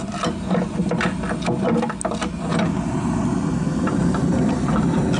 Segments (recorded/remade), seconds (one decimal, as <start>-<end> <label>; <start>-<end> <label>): 0.0-2.5 recorded; 2.5-3.2 remade; 3.2-5.2 recorded